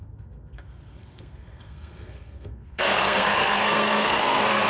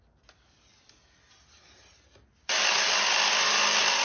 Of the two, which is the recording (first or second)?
second